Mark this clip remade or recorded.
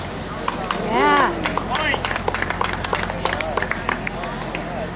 recorded